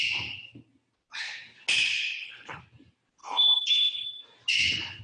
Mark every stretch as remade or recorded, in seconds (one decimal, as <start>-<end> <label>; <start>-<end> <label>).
0.0-2.1 recorded; 2.1-2.6 remade; 2.6-3.2 recorded; 3.2-4.2 remade; 4.2-5.0 recorded

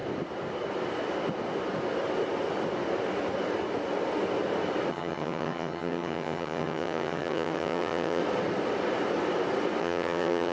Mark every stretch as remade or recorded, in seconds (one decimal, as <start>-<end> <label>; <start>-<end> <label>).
0.0-4.9 recorded; 4.9-8.2 remade; 8.2-9.8 recorded; 9.8-10.5 remade